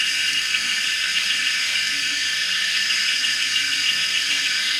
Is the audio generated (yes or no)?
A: yes